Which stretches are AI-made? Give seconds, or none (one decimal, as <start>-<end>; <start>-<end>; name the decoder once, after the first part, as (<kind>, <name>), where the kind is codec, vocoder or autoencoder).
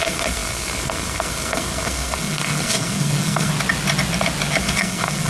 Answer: 0.0-3.5 (codec, SNAC); 4.6-5.3